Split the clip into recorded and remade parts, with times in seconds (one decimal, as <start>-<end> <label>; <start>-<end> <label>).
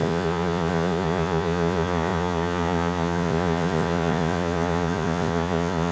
0.0-5.9 remade